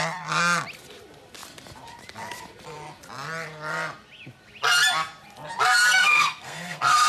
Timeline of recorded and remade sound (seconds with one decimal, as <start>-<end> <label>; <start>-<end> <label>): 0.0-6.0 recorded; 6.0-7.1 remade